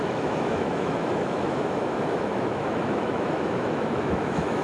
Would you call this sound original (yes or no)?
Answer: no